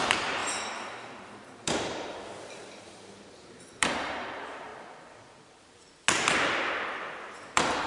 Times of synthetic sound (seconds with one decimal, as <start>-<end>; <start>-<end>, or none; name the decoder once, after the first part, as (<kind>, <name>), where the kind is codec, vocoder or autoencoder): 0.0-4.7 (vocoder, BigVGAN v2); 7.1-7.9